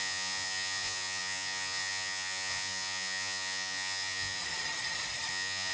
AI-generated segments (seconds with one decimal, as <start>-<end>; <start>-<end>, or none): 0.0-4.4; 5.3-5.7